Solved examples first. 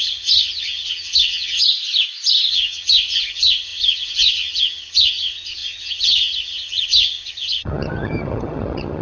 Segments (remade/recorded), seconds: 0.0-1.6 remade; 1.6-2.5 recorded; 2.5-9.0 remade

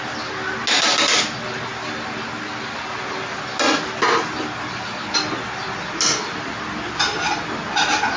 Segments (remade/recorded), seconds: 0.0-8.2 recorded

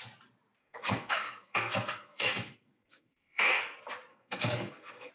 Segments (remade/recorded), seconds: 0.0-0.6 recorded; 0.6-3.6 remade; 3.6-4.1 recorded; 4.1-5.1 remade

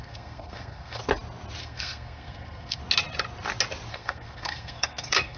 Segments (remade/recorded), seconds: 0.0-1.0 remade; 1.0-1.6 recorded; 1.6-2.8 remade; 2.8-3.9 recorded; 3.9-5.4 remade

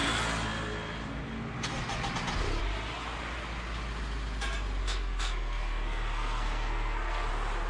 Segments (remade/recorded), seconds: 0.0-4.8 recorded; 4.8-7.3 remade; 7.3-7.7 recorded